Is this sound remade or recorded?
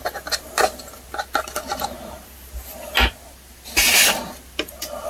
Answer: recorded